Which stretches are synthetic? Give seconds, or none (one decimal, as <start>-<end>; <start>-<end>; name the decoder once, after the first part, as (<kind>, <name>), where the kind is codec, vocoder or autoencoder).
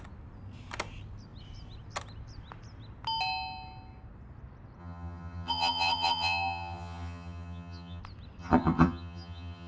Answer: 4.8-8.0 (vocoder, HiFi-GAN); 8.4-9.7